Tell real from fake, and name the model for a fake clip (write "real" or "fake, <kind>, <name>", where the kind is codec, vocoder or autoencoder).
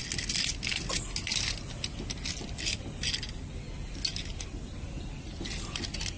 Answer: real